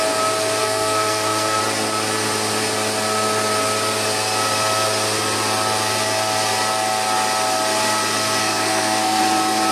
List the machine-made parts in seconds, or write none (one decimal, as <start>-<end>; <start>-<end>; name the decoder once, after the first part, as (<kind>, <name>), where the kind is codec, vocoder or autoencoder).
0.6-1.6 (codec, SNAC); 8.4-9.2